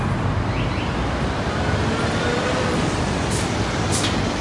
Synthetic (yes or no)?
no